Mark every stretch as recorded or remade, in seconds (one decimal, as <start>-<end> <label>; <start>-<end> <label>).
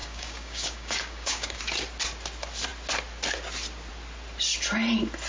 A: 0.0-1.6 remade; 1.6-5.3 recorded